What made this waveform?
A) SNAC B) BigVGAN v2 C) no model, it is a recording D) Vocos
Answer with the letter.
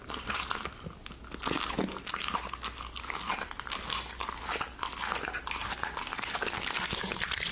C